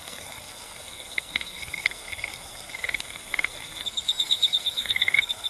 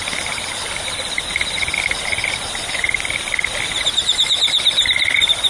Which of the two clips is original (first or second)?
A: second